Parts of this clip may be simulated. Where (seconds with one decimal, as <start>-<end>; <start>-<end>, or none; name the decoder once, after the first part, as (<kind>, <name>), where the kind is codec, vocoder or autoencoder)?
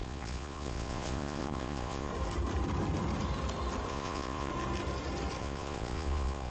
0.0-2.1 (vocoder, Vocos); 3.9-4.5; 5.4-6.5